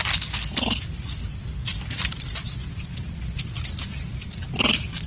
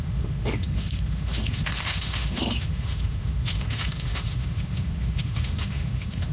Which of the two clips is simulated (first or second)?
second